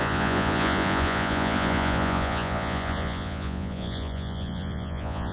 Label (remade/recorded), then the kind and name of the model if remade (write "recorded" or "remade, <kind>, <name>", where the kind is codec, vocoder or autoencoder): remade, vocoder, Vocos